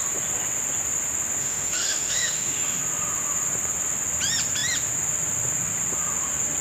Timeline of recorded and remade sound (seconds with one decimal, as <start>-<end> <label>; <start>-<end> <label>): 0.0-1.4 recorded; 1.4-2.8 remade; 2.8-6.6 recorded

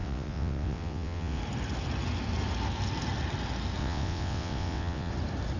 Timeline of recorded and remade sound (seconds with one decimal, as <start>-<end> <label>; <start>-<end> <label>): 0.0-1.4 remade; 1.4-3.8 recorded; 3.8-5.1 remade; 5.1-5.6 recorded

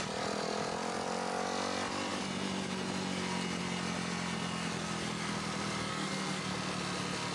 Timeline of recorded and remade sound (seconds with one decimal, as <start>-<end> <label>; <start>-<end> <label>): 0.0-5.9 recorded; 5.9-6.4 remade; 6.4-7.3 recorded

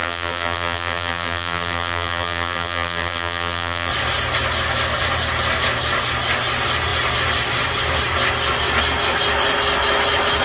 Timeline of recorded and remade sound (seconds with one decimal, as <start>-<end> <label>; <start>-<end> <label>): 0.0-3.9 remade; 3.9-10.4 recorded

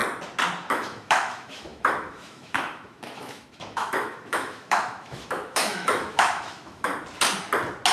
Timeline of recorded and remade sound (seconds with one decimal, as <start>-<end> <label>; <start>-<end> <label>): 0.0-0.7 recorded; 0.7-6.9 remade; 6.9-7.9 recorded

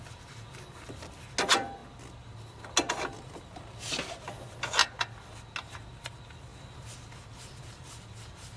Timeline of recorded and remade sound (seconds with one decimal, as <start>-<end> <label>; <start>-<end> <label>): 0.0-8.6 recorded

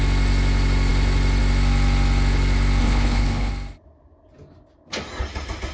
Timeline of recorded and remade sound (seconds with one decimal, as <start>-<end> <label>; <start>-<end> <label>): 0.0-2.8 recorded; 2.8-3.5 remade; 3.5-5.7 recorded